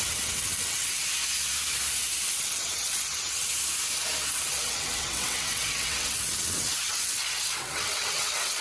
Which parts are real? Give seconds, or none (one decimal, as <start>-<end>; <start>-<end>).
1.0-2.4; 3.5-4.3